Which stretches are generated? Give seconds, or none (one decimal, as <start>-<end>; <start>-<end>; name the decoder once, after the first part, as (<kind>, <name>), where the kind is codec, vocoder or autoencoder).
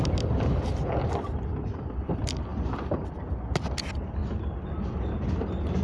none